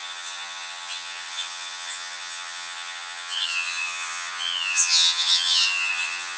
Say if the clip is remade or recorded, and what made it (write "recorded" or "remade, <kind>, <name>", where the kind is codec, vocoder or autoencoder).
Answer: remade, vocoder, HiFi-GAN